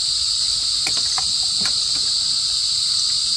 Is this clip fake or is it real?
real